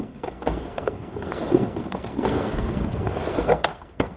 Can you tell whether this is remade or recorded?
remade